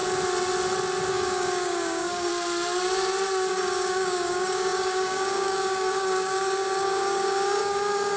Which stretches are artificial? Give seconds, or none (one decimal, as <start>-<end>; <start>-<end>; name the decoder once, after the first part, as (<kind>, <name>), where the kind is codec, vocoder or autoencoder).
1.1-2.3 (codec, DAC); 3.5-8.2